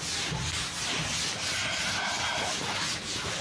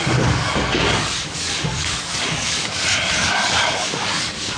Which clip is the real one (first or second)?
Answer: first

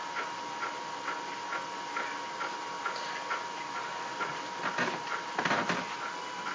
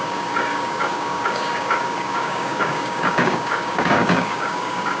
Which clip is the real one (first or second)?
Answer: first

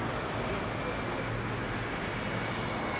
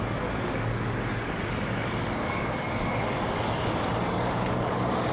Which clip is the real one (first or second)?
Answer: first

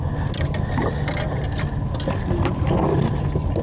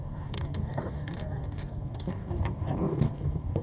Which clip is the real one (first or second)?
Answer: first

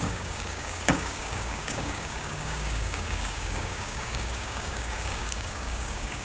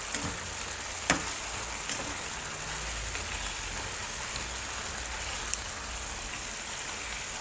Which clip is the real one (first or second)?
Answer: second